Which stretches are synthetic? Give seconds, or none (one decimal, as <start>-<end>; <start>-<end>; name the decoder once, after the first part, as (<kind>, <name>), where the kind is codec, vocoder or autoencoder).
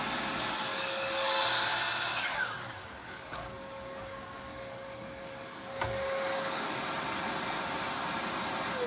0.7-1.4 (codec, DAC); 2.1-6.8